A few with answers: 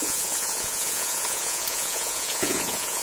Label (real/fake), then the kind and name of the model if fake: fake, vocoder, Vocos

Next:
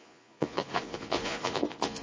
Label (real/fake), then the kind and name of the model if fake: fake, vocoder, Vocos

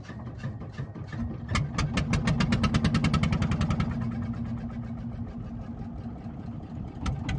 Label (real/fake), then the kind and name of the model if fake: real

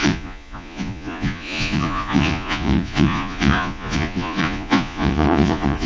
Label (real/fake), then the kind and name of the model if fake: fake, vocoder, Vocos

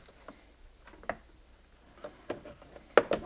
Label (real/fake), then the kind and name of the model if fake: real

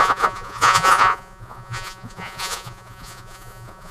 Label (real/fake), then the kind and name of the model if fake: fake, vocoder, Vocos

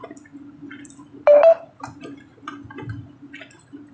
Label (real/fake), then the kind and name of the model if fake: real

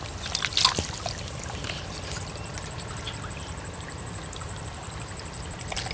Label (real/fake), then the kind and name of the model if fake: real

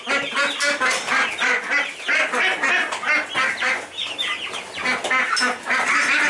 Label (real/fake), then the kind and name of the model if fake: real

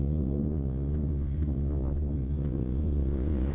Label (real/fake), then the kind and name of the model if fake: fake, vocoder, Vocos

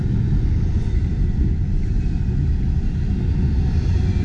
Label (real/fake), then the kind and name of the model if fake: real